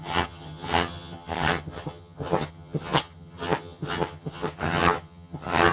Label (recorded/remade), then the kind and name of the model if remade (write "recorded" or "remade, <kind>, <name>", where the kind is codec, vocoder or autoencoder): remade, vocoder, HiFi-GAN